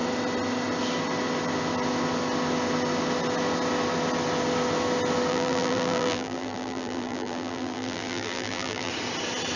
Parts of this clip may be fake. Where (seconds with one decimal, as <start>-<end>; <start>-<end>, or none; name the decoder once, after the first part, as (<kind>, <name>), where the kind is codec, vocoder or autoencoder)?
5.3-8.9 (vocoder, BigVGAN v2)